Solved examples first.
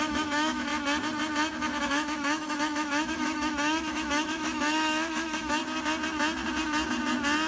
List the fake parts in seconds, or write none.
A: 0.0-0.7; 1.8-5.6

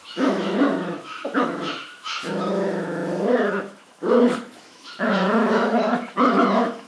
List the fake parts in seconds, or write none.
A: 0.0-6.9

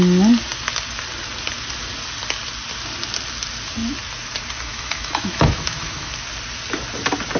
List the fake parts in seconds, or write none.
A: 4.7-6.1